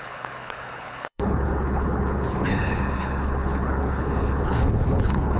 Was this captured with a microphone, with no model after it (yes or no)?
no